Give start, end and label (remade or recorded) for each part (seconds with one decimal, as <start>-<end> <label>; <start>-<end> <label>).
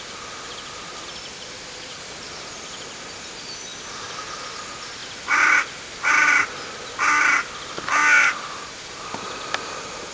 0.0-10.1 recorded